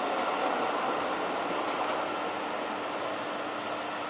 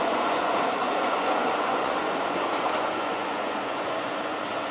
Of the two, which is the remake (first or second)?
second